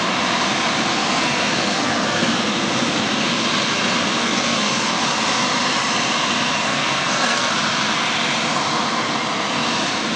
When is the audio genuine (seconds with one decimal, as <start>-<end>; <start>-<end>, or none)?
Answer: 0.0-0.9; 2.4-4.2; 5.0-6.7; 7.5-10.2